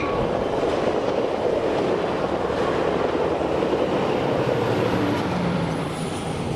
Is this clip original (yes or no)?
no